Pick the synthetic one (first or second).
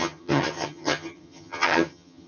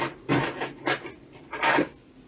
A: first